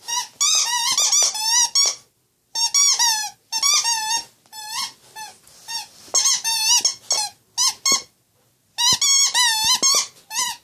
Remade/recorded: recorded